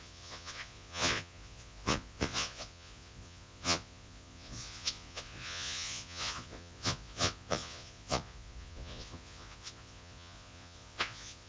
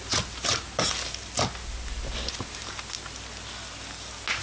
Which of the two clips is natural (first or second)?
second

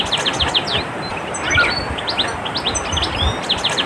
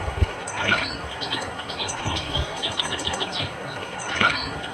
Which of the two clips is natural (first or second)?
first